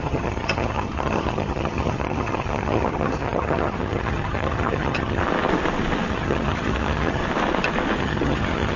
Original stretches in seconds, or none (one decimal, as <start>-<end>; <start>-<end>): 5.2-6.1; 7.2-8.0